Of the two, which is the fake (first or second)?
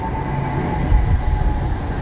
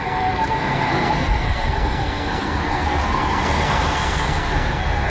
second